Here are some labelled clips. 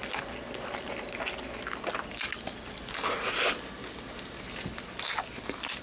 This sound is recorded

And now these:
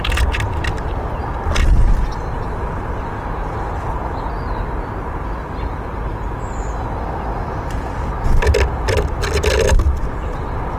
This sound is recorded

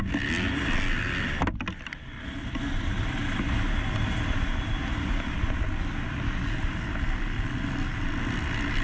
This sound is recorded